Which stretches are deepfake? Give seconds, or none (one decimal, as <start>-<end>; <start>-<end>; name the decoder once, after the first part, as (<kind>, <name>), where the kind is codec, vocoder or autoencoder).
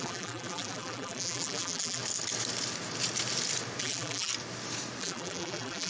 0.0-2.0 (vocoder, BigVGAN v2); 3.8-4.3; 5.0-5.9